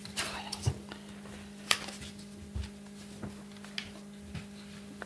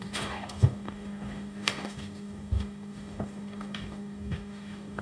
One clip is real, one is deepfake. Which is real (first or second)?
first